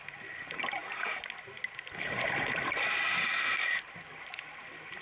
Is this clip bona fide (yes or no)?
yes